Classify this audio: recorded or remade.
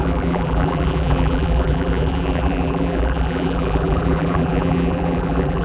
remade